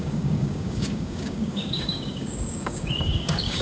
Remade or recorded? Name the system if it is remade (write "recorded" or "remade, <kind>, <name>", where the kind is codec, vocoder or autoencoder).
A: remade, codec, DAC